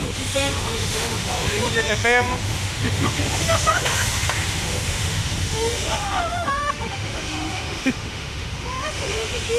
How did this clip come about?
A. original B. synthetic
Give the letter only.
B